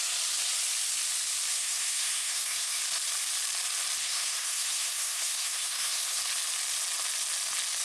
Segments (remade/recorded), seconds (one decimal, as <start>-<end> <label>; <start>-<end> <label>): 0.0-1.5 recorded; 1.5-2.8 remade; 2.8-4.0 recorded; 4.0-6.2 remade; 6.2-7.8 recorded